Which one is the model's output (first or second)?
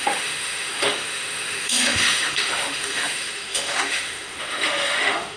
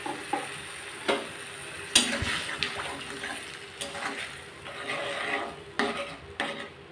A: first